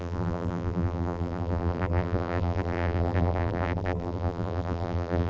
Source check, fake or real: fake